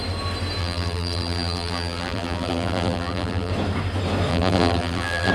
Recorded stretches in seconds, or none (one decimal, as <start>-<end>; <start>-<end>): 0.0-0.6; 3.5-4.3